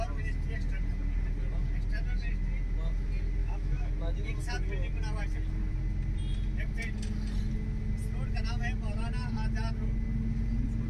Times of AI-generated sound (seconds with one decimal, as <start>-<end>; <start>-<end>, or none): 3.4-3.9